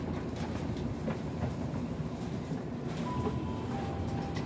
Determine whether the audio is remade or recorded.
recorded